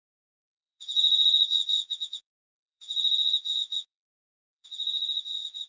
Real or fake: fake